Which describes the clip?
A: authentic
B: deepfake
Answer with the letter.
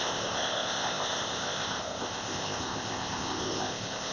B